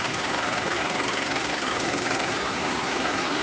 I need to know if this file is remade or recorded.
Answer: remade